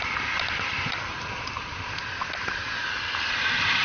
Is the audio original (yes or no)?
no